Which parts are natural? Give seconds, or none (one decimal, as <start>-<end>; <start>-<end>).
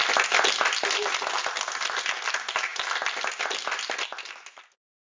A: 0.0-5.0